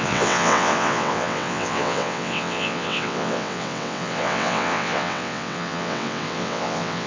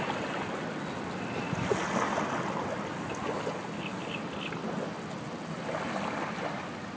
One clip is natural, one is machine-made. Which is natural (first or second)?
second